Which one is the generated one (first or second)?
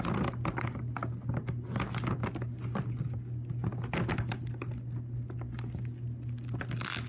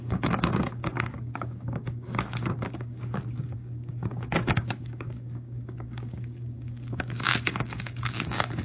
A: second